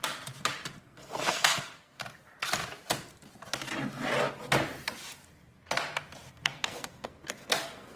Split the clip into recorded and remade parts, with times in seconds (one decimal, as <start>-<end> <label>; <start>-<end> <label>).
0.0-0.8 recorded; 0.8-2.0 remade; 2.0-6.3 recorded; 6.3-8.0 remade